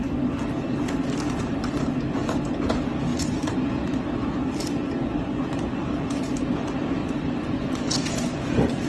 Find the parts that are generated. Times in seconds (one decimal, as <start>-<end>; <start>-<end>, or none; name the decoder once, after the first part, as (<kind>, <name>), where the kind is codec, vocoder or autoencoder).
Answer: 3.1-3.7 (vocoder, Vocos); 7.0-8.4